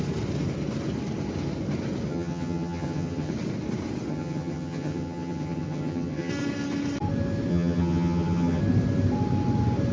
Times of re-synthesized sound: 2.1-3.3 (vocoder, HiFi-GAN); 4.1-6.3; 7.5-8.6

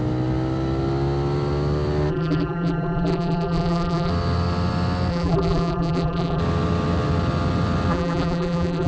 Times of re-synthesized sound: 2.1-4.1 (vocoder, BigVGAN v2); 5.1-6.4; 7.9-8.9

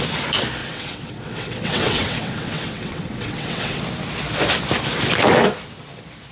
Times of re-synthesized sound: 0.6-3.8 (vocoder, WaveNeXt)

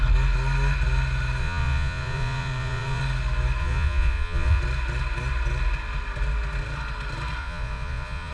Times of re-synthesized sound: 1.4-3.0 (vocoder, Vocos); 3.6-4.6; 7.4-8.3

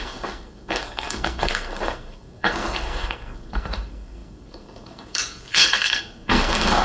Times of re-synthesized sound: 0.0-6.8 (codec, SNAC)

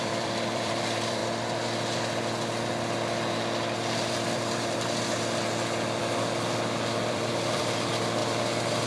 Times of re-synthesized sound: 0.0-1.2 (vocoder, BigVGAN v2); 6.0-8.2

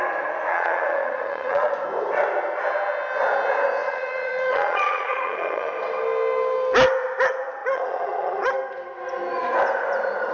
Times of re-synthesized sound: 0.5-1.7 (vocoder, Vocos); 3.8-5.7; 7.6-8.5

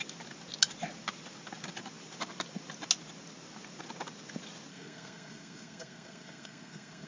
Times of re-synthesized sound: 4.7-7.1 (codec, SNAC)